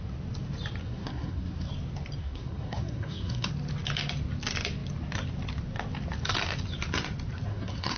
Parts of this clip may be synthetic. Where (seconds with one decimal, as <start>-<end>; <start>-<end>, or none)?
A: 0.8-1.7; 2.2-3.5; 7.5-8.0